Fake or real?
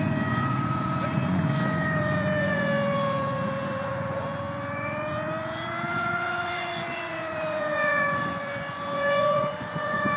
fake